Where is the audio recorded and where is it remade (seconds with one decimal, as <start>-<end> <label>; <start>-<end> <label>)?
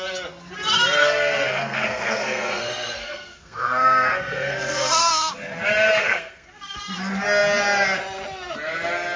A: 0.0-1.0 recorded; 1.0-5.3 remade; 5.3-6.0 recorded; 6.0-6.8 remade; 6.8-9.2 recorded